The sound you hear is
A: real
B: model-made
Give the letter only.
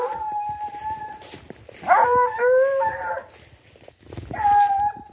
A